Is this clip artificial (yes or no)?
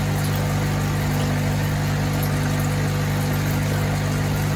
no